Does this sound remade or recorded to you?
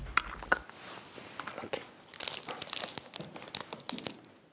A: recorded